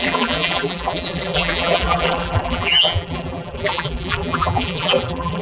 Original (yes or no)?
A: no